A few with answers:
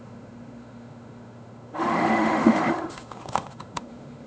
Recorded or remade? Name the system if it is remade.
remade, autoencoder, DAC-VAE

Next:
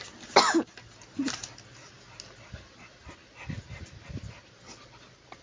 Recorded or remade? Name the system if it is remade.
recorded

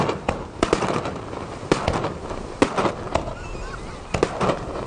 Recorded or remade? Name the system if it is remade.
recorded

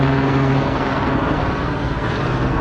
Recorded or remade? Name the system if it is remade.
remade, codec, SNAC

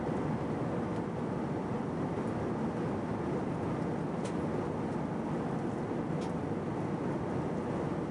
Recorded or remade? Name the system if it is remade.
recorded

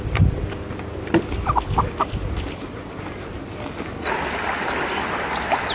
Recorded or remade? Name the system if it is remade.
recorded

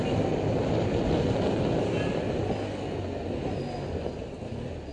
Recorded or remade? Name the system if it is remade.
recorded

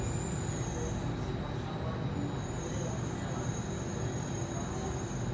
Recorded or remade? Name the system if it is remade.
recorded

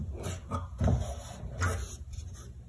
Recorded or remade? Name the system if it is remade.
recorded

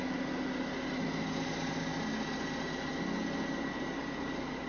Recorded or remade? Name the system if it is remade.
recorded